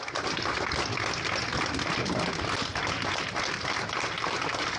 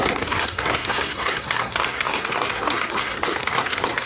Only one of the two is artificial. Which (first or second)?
second